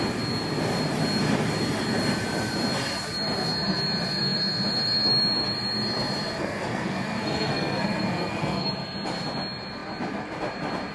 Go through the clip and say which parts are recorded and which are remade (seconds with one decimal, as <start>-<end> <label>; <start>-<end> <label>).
0.0-6.4 recorded; 6.4-8.7 remade; 8.7-10.9 recorded